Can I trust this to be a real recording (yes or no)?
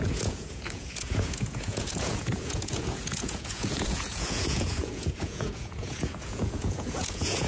no